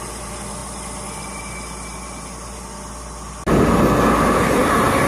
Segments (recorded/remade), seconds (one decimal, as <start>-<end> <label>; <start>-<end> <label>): 0.0-4.4 recorded; 4.4-5.1 remade